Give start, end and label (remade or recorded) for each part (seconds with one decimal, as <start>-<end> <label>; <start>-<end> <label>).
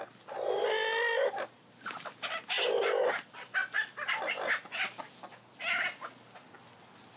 0.0-7.2 recorded